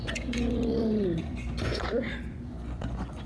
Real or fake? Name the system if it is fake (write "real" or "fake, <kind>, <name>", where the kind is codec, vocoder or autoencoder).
fake, vocoder, Vocos